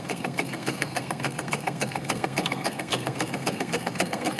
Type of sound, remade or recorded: remade